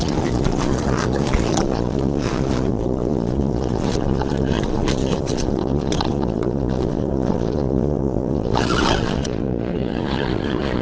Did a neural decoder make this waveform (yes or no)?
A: yes